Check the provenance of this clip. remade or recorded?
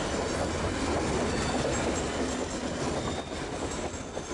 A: recorded